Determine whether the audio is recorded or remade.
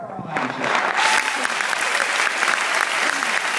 recorded